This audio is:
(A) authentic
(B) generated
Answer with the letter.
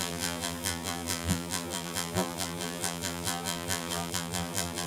B